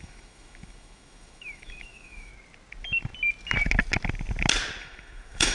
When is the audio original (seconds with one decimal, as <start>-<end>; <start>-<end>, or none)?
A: 2.3-4.8